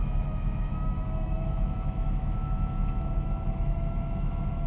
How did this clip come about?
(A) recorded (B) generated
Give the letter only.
B